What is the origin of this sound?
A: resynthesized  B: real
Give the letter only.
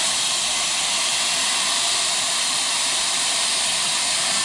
A